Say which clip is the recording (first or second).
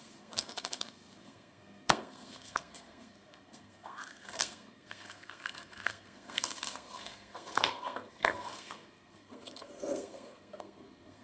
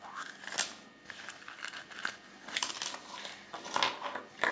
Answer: second